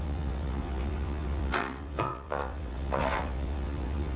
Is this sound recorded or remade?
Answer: remade